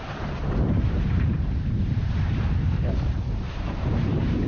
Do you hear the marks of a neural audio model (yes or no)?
yes